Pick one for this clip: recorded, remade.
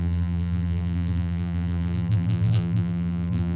remade